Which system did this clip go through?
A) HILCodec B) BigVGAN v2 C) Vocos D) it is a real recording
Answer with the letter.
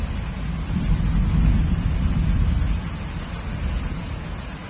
D